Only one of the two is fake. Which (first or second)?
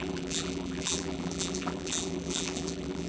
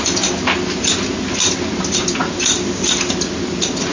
first